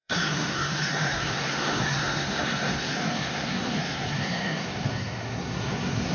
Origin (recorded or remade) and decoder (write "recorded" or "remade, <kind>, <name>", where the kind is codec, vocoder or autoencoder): remade, codec, SNAC